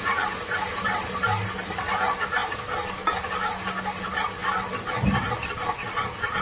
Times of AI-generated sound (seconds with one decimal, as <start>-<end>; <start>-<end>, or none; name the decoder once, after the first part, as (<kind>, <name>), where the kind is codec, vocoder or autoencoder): none

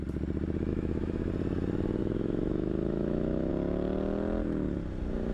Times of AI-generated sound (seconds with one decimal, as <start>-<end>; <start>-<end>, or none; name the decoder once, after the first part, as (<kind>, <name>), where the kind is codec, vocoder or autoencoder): 0.7-1.3 (autoencoder, DAC-VAE); 2.0-3.5

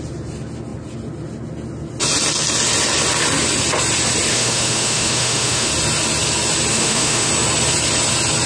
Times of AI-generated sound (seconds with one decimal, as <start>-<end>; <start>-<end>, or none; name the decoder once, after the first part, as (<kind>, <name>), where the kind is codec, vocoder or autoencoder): 4.3-5.7 (autoencoder, DAC-VAE); 6.7-7.3

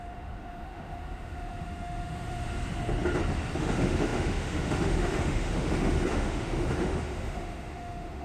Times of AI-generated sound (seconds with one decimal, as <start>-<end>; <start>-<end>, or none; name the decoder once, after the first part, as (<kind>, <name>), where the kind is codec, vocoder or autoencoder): 0.0-2.6 (autoencoder, DAC-VAE); 3.6-8.2

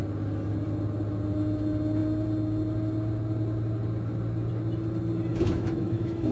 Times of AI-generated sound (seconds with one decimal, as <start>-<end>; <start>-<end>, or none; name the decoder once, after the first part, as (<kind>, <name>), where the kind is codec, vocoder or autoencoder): 5.3-6.3 (autoencoder, DAC-VAE)